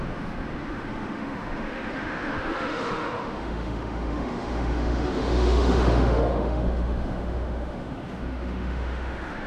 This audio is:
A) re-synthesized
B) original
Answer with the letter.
A